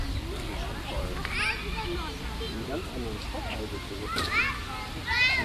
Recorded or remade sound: recorded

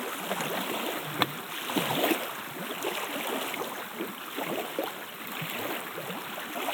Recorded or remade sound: recorded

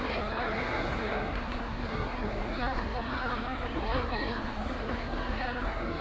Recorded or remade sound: remade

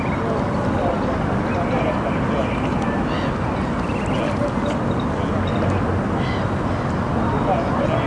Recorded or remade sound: recorded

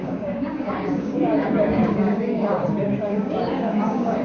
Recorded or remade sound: remade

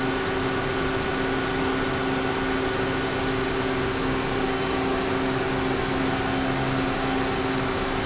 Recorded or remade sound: recorded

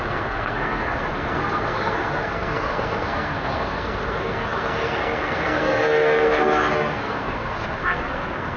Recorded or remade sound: remade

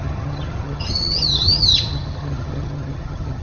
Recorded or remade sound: remade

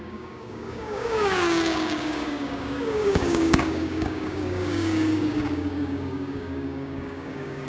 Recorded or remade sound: remade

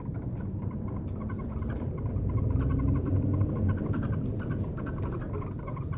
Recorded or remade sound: remade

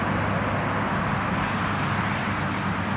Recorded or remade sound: recorded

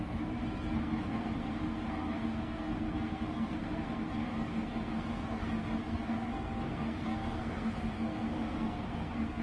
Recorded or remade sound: remade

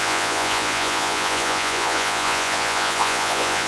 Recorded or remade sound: remade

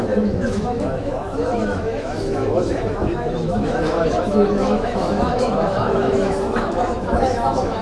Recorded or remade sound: remade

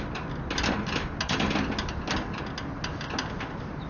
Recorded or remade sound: recorded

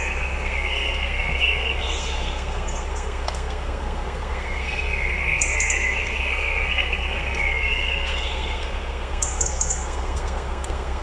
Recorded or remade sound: remade